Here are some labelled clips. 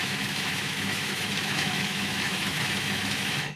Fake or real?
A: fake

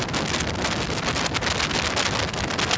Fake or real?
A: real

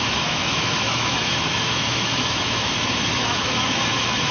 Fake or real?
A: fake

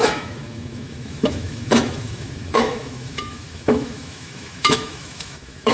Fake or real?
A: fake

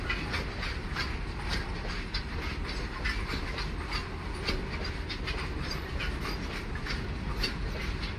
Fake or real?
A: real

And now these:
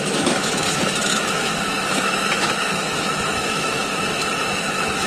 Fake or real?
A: fake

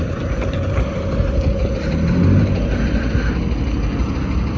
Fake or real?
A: real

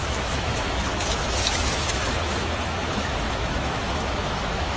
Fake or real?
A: fake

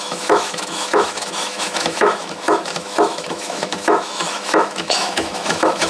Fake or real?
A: fake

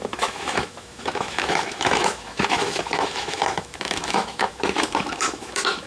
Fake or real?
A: fake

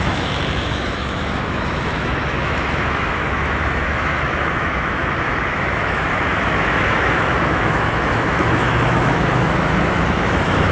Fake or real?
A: fake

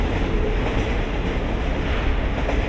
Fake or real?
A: real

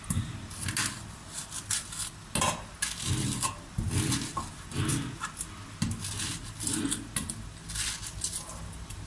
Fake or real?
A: real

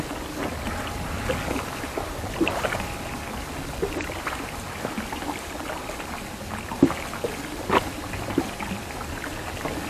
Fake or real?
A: real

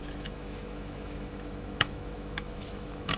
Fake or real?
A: fake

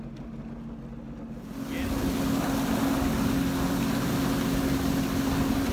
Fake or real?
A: real